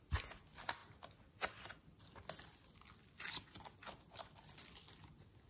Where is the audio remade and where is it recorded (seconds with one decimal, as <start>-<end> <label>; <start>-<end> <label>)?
0.0-5.5 recorded